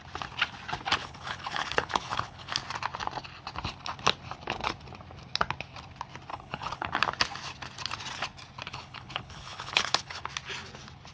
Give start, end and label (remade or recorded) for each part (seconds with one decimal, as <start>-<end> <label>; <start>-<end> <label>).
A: 0.0-1.0 recorded; 1.0-2.5 remade; 2.5-6.3 recorded; 6.3-6.9 remade; 6.9-8.7 recorded; 8.7-10.2 remade; 10.2-11.1 recorded